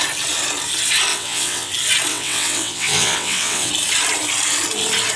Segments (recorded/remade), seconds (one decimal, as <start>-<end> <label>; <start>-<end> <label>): 0.0-1.1 recorded; 1.1-1.7 remade; 1.7-2.1 recorded; 2.1-3.7 remade; 3.7-5.2 recorded